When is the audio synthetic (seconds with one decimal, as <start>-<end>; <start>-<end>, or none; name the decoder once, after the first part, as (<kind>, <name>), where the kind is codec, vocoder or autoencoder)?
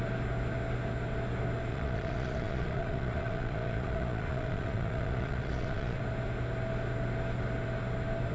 1.7-6.0 (vocoder, Vocos)